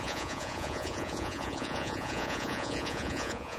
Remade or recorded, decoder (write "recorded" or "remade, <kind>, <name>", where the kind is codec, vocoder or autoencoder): remade, vocoder, Vocos